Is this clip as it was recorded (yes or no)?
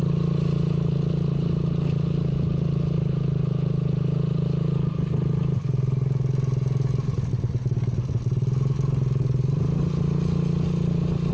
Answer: yes